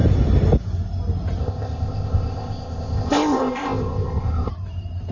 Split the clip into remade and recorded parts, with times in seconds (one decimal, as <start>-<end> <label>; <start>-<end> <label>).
0.0-1.4 recorded; 1.4-4.5 remade; 4.5-5.1 recorded